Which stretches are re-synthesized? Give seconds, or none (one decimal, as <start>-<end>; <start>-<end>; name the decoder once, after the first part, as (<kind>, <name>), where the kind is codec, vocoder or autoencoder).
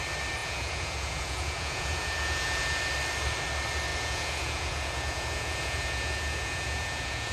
0.4-2.8 (vocoder, Vocos); 3.9-7.3